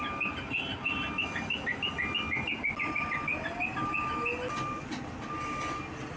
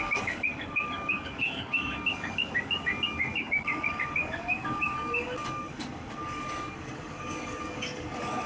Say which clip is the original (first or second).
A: first